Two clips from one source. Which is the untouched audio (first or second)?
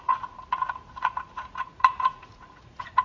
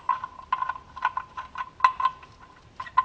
second